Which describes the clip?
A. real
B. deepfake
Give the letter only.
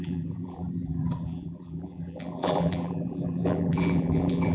B